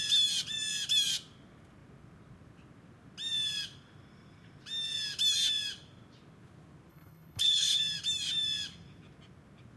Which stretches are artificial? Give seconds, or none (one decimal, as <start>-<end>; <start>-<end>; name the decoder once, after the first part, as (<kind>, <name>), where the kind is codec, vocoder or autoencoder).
6.9-7.8 (codec, HILCodec)